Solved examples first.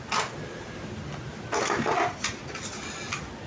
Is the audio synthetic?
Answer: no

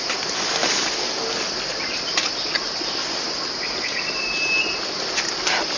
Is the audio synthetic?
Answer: no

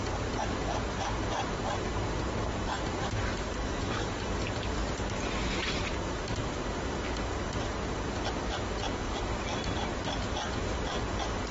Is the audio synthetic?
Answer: no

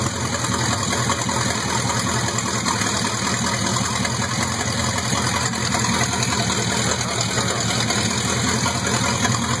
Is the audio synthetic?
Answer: no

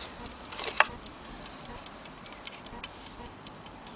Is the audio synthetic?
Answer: yes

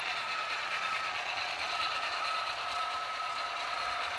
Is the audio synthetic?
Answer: yes